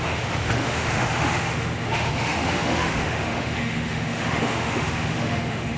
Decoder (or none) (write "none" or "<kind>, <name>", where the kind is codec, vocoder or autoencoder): autoencoder, DAC-VAE